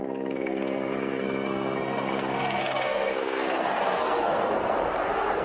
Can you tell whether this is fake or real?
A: fake